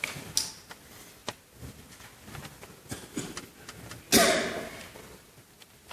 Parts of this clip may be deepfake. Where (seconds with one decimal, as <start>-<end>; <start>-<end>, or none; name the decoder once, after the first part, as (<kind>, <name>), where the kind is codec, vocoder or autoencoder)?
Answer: none